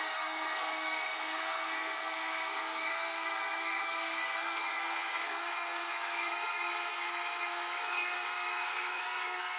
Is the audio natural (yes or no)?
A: no